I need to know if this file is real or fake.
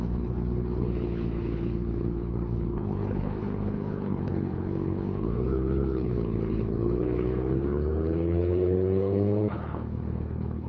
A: fake